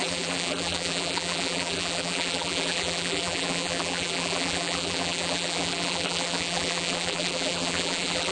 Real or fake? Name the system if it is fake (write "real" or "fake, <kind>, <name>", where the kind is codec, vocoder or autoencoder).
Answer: fake, vocoder, BigVGAN v2